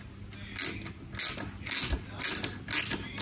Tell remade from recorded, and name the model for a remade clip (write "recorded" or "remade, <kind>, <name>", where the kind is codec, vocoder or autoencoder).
recorded